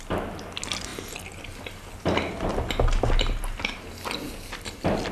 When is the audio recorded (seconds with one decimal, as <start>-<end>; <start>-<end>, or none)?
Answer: 0.0-5.1